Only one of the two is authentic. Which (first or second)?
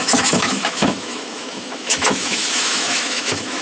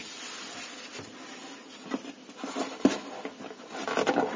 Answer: second